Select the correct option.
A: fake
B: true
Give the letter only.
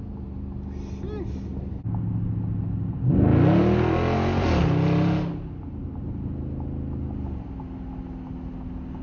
B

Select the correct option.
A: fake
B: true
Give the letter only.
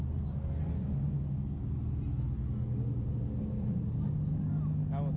B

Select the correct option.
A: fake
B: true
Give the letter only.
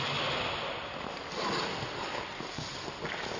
B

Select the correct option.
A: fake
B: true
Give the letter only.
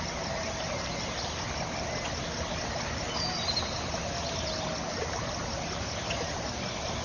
B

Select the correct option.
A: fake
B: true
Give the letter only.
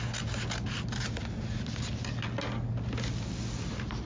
B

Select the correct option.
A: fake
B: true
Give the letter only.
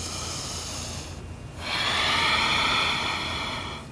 B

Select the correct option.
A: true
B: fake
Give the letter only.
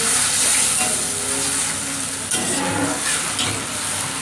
A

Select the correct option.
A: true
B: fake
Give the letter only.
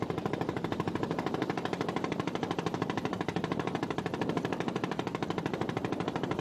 B